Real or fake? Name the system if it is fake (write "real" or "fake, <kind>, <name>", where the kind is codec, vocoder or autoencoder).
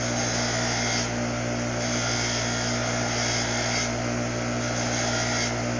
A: real